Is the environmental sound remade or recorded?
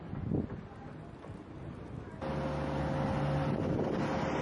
recorded